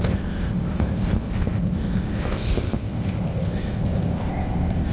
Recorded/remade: remade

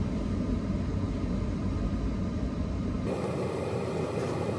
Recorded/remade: recorded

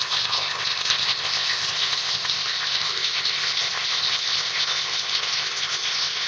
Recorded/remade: remade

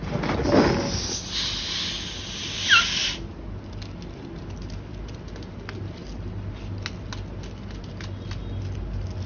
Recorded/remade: recorded